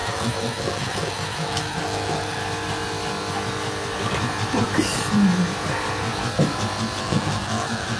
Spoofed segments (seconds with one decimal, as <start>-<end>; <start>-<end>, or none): 0.0-2.4; 7.0-8.0

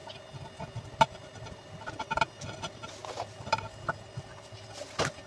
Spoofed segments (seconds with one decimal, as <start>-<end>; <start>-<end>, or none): none

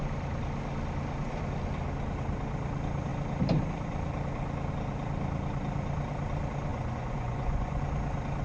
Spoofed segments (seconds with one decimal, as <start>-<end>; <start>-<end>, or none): 6.7-7.8

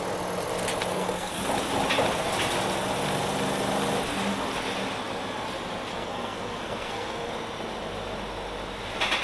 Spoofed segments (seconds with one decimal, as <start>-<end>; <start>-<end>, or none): 0.9-1.4; 5.9-7.3

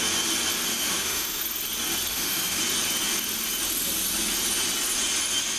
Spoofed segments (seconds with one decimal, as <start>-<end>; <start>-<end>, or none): 0.7-1.4; 2.1-2.6

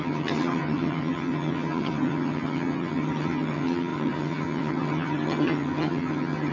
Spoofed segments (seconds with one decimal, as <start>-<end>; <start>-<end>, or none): 0.0-6.5

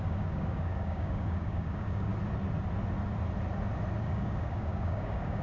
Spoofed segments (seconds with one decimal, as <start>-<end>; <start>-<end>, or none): 0.0-2.1; 4.0-5.4

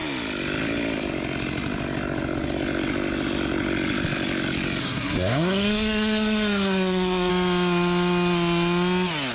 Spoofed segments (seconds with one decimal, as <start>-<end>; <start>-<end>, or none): 4.8-7.3